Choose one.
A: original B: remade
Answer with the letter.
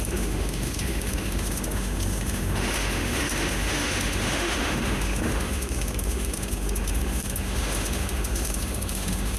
B